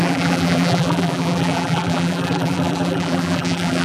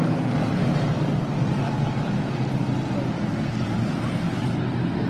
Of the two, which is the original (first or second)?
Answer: second